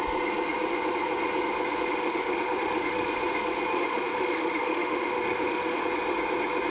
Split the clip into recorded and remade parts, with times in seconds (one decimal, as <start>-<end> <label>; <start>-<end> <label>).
0.0-2.0 recorded; 2.0-3.1 remade; 3.1-3.7 recorded; 3.7-5.8 remade; 5.8-6.7 recorded